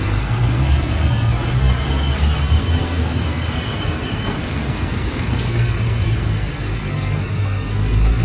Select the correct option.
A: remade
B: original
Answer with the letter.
A